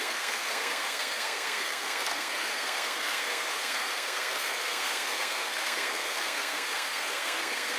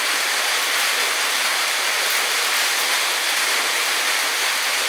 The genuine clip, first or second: second